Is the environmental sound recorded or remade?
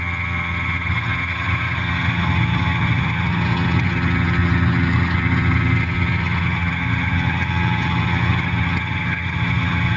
remade